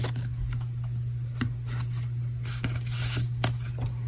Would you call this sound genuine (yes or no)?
yes